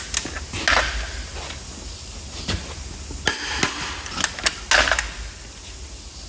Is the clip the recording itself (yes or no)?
yes